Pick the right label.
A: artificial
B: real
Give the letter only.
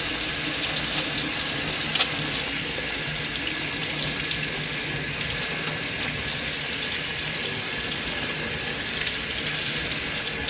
B